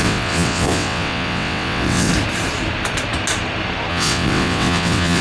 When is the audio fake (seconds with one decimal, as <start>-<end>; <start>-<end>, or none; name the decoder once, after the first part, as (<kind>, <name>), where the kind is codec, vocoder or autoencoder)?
0.0-2.1 (vocoder, WaveNeXt); 3.9-5.2